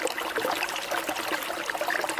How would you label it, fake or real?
real